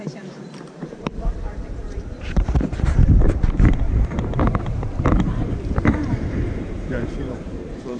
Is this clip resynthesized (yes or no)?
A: yes